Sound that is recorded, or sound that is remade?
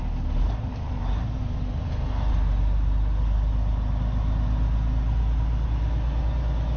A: recorded